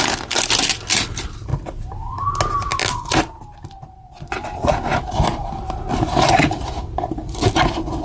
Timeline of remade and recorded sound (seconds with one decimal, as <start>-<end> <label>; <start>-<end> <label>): 0.0-8.0 recorded